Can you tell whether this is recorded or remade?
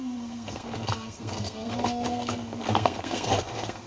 remade